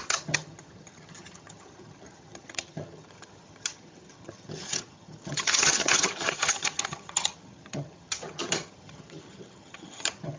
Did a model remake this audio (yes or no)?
yes